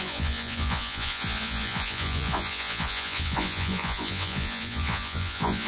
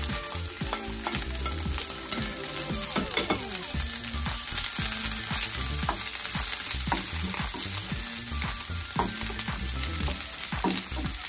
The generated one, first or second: first